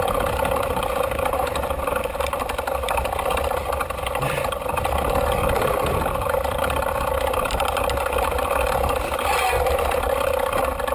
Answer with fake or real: real